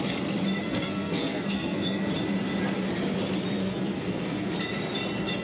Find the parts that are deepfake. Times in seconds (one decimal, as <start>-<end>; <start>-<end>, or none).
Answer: 0.6-2.1; 3.6-4.5